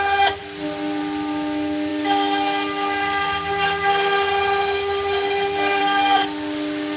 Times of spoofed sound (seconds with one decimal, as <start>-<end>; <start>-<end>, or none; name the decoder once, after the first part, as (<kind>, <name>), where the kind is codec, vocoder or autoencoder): none